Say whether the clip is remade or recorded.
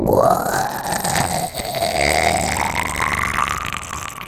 recorded